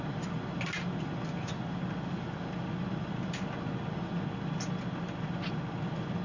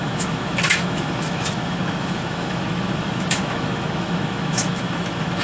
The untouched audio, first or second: first